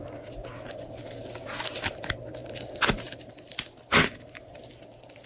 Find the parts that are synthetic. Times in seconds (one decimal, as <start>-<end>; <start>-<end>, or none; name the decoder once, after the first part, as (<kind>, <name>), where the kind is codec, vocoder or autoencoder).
3.9-4.6 (vocoder, BigVGAN v2)